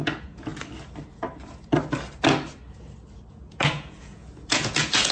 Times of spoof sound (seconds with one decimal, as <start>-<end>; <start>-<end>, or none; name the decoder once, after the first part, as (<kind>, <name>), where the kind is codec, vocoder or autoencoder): 0.0-0.5 (vocoder, Vocos); 3.3-5.1

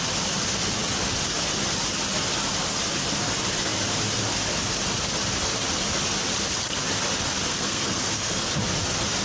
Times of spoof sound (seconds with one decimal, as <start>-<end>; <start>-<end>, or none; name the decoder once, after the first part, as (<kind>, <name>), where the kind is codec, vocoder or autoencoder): 7.5-8.5 (codec, SNAC)

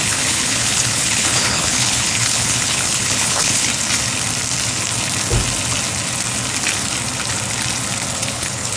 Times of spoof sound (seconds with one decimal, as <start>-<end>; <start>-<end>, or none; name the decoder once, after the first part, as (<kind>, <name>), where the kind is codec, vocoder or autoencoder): 0.0-3.7 (codec, HILCodec); 8.3-8.8

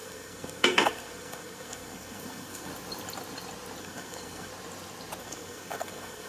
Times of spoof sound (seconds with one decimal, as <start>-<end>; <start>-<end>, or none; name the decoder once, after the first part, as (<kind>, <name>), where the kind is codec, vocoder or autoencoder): 0.0-2.7 (codec, SNAC); 3.8-4.5; 5.2-6.3

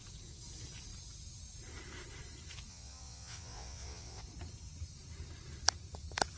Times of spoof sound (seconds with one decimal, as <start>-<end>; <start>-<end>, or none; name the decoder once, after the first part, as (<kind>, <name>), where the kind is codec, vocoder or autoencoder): 2.7-4.2 (vocoder, WaveNeXt)

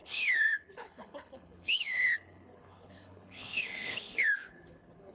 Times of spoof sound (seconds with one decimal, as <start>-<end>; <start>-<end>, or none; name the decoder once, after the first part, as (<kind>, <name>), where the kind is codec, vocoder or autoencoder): 0.0-5.1 (codec, HILCodec)

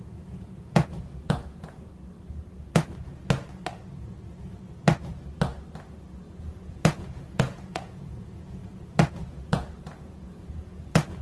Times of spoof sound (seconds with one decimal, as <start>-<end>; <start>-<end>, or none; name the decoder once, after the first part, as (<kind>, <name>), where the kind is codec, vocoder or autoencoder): 0.0-1.9 (vocoder, Vocos); 6.4-11.2

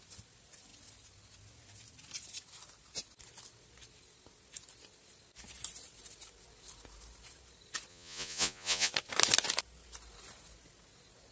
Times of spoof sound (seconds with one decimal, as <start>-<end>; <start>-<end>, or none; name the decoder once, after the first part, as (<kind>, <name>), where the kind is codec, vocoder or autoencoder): 7.9-8.9 (vocoder, Vocos)